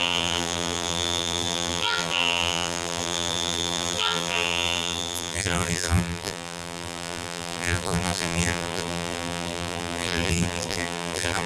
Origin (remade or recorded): remade